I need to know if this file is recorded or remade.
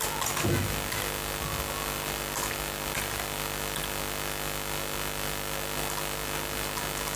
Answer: recorded